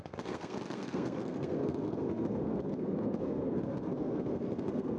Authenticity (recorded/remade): remade